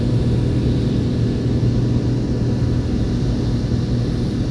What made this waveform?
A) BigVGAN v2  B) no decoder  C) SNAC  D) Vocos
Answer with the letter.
B